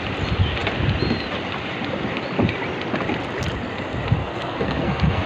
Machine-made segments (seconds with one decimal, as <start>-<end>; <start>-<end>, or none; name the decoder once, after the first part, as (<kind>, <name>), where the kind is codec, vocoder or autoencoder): 4.2-5.3 (codec, SNAC)